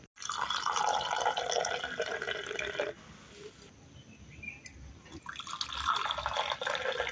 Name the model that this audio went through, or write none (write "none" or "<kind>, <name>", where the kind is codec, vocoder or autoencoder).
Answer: none